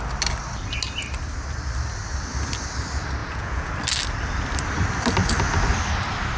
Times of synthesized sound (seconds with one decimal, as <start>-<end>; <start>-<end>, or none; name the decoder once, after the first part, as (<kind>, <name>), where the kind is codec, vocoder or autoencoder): 3.2-3.7 (vocoder, Vocos)